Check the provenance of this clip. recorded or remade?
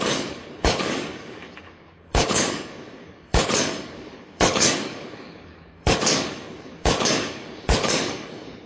remade